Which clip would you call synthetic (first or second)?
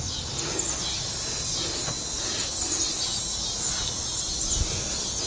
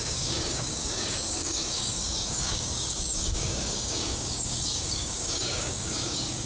second